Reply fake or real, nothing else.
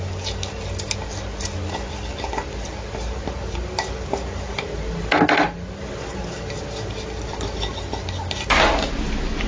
real